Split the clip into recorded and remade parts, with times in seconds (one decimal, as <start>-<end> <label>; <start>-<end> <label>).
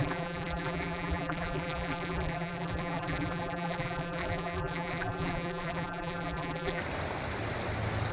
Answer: 0.0-6.8 remade; 6.8-8.1 recorded